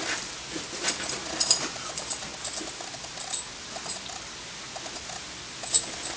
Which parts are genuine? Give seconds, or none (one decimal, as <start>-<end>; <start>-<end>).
0.0-6.2